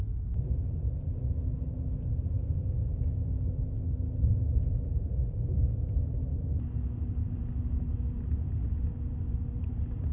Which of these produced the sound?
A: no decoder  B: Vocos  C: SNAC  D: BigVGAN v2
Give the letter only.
A